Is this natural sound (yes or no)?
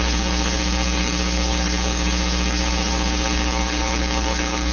no